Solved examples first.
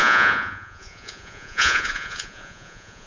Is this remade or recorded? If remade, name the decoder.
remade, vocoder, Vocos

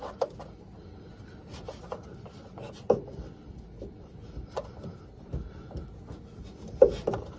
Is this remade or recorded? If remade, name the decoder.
recorded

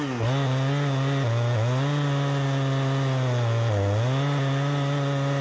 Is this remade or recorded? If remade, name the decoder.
recorded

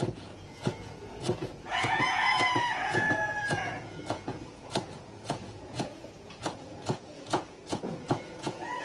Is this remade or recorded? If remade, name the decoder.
remade, vocoder, Vocos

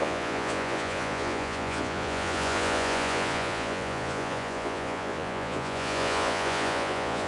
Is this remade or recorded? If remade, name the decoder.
remade, vocoder, Vocos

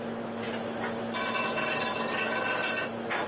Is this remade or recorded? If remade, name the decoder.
recorded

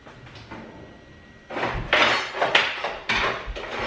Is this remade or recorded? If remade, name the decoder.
recorded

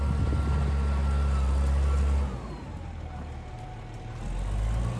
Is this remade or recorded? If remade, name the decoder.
recorded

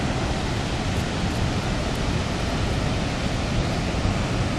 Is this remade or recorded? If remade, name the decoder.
recorded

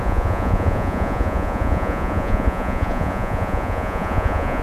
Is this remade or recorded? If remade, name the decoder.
remade, vocoder, Vocos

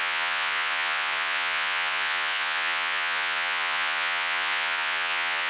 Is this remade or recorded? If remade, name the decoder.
remade, vocoder, Vocos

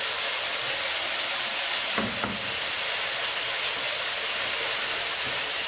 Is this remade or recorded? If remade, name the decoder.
recorded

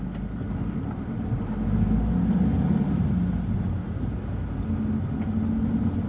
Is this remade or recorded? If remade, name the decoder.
recorded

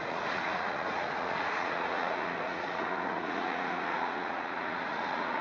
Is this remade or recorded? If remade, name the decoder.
remade, vocoder, Vocos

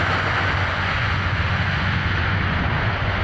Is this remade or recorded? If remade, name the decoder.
remade, vocoder, Vocos